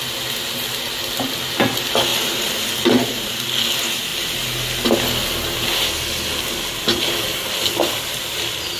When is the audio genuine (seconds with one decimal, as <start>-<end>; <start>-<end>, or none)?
0.0-2.1; 3.4-8.8